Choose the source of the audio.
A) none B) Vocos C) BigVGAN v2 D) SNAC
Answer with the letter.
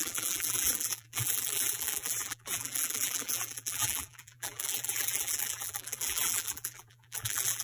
C